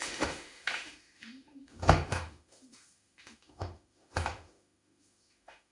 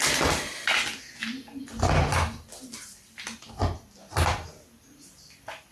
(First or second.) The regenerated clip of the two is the first